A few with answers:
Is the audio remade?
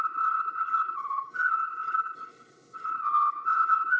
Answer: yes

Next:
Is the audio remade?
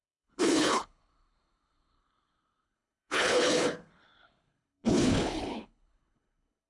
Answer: yes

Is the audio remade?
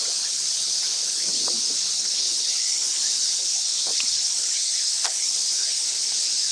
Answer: yes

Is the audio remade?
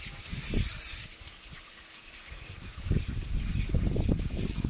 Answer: no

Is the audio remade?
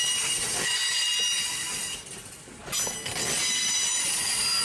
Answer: no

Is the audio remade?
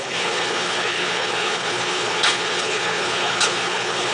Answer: yes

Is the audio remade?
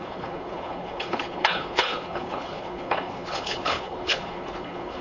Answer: yes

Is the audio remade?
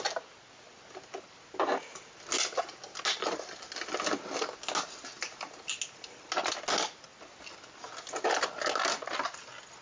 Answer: no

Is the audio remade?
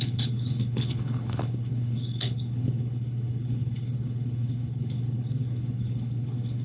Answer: yes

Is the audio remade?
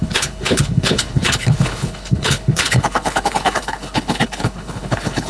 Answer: yes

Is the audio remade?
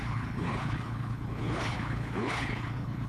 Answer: yes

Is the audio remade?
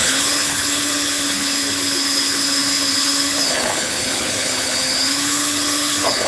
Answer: yes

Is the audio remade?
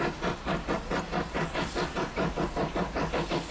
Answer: no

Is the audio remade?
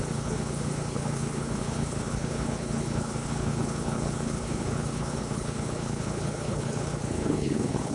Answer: yes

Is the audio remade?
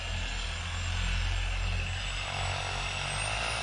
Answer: no